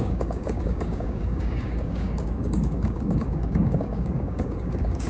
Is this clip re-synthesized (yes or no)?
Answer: yes